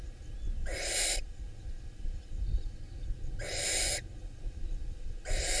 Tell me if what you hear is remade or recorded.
recorded